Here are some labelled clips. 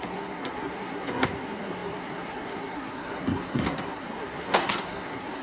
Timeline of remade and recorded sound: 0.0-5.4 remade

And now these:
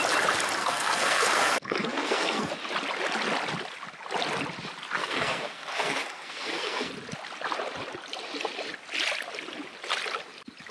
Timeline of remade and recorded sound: 0.0-0.6 recorded; 0.6-2.5 remade; 2.5-5.0 recorded; 5.0-6.9 remade; 6.9-10.7 recorded

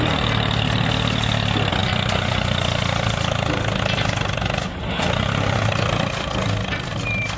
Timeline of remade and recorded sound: 0.0-7.4 recorded

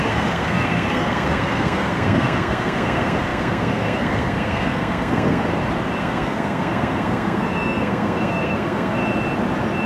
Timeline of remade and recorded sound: 0.0-5.5 remade; 5.5-6.0 recorded; 6.0-9.0 remade; 9.0-9.9 recorded

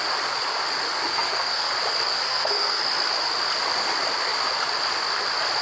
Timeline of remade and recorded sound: 0.0-1.1 recorded; 1.1-1.7 remade; 1.7-2.1 recorded; 2.1-2.8 remade; 2.8-5.6 recorded

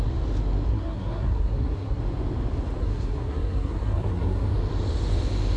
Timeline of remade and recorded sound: 0.0-0.7 recorded; 0.7-2.0 remade; 2.0-2.8 recorded; 2.8-4.5 remade; 4.5-5.6 recorded

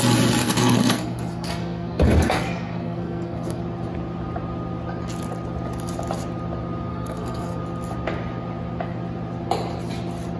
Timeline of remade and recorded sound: 0.0-0.4 recorded; 0.4-3.6 remade; 3.6-6.9 recorded; 6.9-7.6 remade; 7.6-10.4 recorded

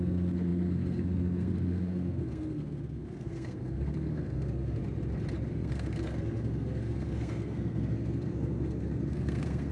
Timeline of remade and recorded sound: 0.0-4.8 remade; 4.8-5.5 recorded; 5.5-9.7 remade